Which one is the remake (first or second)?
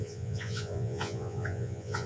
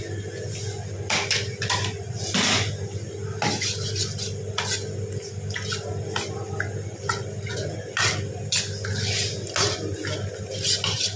first